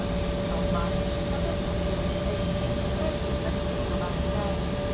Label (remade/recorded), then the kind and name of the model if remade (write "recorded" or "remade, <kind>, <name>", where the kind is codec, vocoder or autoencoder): recorded